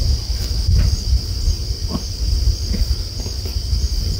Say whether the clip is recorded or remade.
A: recorded